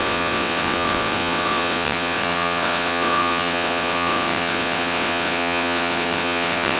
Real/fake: fake